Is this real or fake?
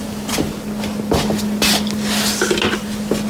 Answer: real